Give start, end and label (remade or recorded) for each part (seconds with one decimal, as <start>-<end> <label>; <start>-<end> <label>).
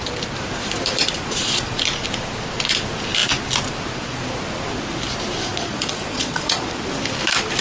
0.0-1.0 recorded; 1.0-1.8 remade; 1.8-5.5 recorded; 5.5-6.8 remade; 6.8-7.6 recorded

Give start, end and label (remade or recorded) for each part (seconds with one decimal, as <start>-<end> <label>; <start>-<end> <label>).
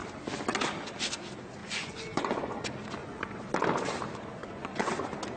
0.0-1.6 recorded; 1.6-2.6 remade; 2.6-3.0 recorded; 3.0-3.5 remade; 3.5-4.4 recorded; 4.4-4.9 remade; 4.9-5.4 recorded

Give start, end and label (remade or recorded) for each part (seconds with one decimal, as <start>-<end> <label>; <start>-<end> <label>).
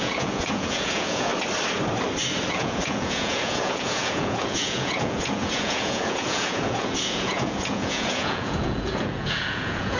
0.0-1.3 remade; 1.3-2.5 recorded; 2.5-10.0 remade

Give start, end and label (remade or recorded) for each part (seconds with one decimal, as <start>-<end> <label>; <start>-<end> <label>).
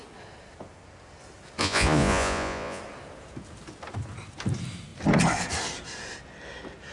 0.0-1.6 recorded; 1.6-2.8 remade; 2.8-6.9 recorded